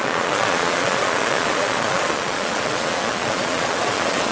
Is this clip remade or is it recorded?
remade